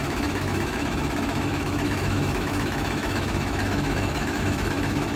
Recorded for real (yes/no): no